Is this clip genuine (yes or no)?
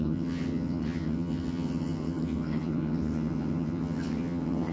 no